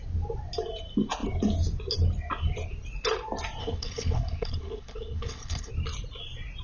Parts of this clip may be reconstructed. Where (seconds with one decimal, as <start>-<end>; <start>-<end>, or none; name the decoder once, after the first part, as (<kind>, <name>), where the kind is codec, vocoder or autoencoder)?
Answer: 3.6-5.7 (codec, HILCodec)